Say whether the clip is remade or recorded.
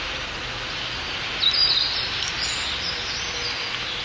recorded